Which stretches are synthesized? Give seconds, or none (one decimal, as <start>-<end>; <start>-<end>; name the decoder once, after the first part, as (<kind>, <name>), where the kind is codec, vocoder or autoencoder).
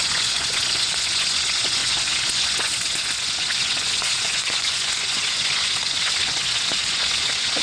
0.0-7.6 (vocoder, Vocos)